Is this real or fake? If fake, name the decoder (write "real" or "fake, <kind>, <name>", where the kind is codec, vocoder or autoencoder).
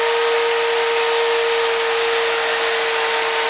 real